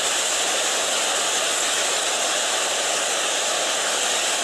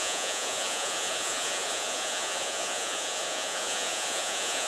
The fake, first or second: second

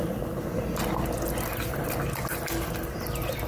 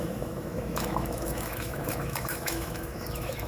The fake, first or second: second